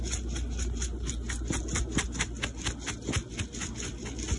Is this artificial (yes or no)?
no